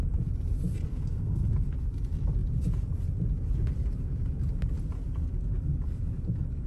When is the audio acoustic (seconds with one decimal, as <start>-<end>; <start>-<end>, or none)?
0.0-0.9; 1.5-6.7